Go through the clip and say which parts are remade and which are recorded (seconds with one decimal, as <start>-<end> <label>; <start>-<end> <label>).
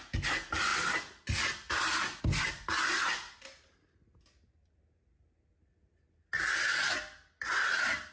0.0-8.1 recorded